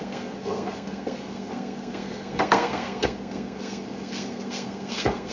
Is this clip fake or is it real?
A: fake